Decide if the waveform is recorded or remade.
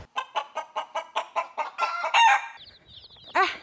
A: recorded